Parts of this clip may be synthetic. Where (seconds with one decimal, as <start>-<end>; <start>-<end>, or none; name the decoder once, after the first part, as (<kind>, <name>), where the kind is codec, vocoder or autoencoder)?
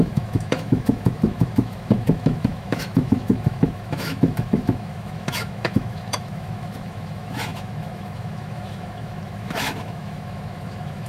0.0-11.1 (autoencoder, DAC-VAE)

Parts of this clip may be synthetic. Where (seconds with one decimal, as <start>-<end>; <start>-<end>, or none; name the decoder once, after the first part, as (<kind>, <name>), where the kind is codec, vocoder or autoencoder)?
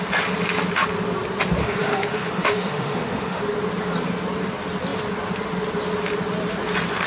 1.6-3.4 (autoencoder, DAC-VAE)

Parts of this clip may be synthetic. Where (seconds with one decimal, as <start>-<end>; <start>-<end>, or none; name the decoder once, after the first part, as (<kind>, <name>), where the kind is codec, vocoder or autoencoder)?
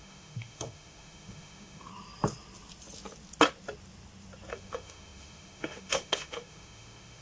0.0-1.9 (autoencoder, DAC-VAE); 4.5-7.2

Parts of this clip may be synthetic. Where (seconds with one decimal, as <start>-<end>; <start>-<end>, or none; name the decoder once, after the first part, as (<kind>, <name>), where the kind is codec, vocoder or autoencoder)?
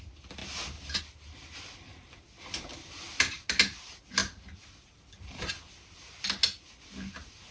none